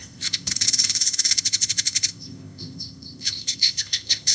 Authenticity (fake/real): fake